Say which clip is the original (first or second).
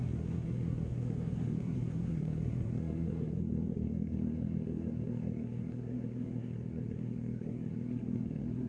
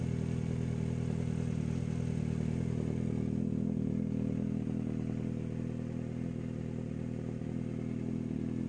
second